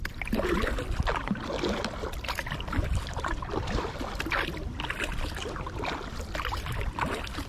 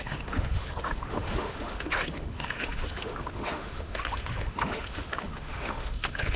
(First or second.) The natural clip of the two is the first